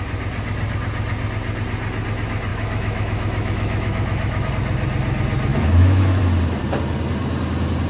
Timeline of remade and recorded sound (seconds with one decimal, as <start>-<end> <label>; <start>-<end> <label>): 0.0-2.5 recorded; 2.5-4.5 remade; 4.5-5.5 recorded; 5.5-6.2 remade; 6.2-7.9 recorded